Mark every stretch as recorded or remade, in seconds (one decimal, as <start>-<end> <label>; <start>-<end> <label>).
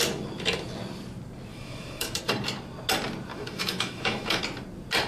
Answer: 0.0-1.5 recorded; 1.5-2.2 remade; 2.2-3.3 recorded; 3.3-4.4 remade; 4.4-5.1 recorded